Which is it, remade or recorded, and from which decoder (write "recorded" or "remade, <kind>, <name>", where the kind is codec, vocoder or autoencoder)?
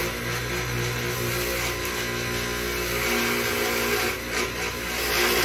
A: recorded